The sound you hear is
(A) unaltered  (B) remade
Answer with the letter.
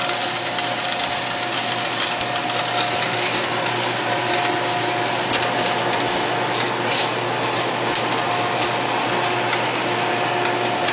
A